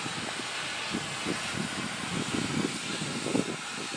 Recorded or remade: recorded